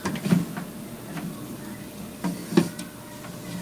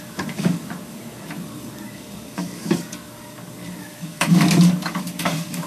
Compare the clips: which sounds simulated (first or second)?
second